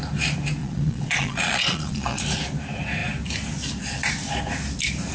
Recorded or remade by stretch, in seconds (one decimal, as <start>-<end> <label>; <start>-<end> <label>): 0.0-0.6 recorded; 0.6-2.2 remade; 2.2-5.1 recorded